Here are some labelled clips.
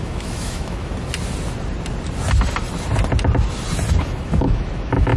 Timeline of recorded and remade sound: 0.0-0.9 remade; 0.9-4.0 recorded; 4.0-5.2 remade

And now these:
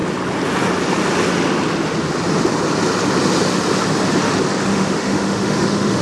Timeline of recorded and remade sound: 0.0-4.7 recorded; 4.7-6.0 remade

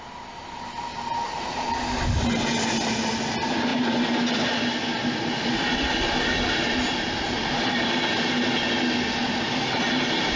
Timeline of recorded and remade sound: 0.0-10.4 recorded

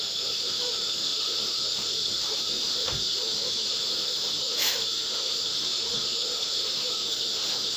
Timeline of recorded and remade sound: 0.0-7.8 remade

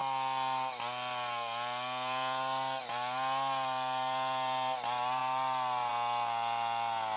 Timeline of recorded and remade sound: 0.0-7.2 recorded

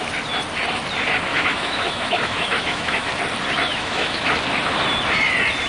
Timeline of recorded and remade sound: 0.0-1.3 recorded; 1.3-3.1 remade; 3.1-3.7 recorded; 3.7-4.2 remade; 4.2-5.7 recorded

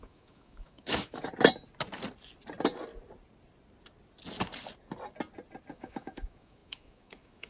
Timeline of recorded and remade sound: 0.0-1.2 remade; 1.2-5.7 recorded; 5.7-7.5 remade

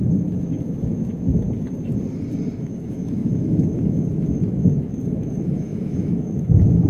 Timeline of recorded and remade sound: 0.0-1.3 remade; 1.3-2.6 recorded; 2.6-6.9 remade